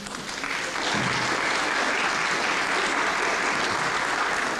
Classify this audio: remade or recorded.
recorded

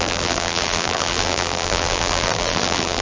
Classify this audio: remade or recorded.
remade